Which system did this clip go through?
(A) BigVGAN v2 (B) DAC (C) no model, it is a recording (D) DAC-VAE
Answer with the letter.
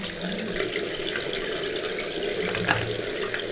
C